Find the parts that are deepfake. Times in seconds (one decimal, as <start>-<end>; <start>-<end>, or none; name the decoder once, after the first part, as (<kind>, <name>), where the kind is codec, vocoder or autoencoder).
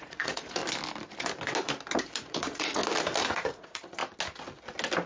0.0-0.6 (vocoder, Vocos); 2.0-2.8; 3.3-4.0